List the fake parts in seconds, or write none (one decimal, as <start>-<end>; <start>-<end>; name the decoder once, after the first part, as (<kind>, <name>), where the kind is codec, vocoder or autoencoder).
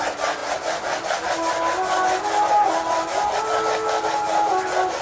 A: none